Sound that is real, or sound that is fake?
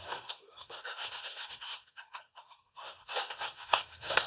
fake